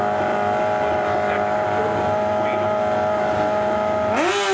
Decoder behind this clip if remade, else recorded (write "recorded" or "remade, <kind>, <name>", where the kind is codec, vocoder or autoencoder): recorded